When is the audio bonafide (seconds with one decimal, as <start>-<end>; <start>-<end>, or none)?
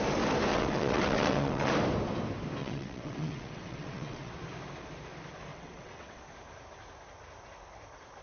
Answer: 0.0-0.5; 1.7-2.6; 4.3-5.5; 6.2-8.2